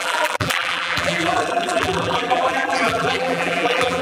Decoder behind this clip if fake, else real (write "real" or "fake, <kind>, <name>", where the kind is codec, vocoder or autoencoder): fake, vocoder, BigVGAN v2